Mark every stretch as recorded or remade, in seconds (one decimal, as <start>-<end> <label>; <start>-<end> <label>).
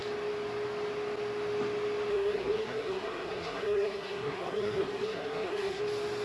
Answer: 0.0-2.1 recorded; 2.1-5.8 remade; 5.8-6.2 recorded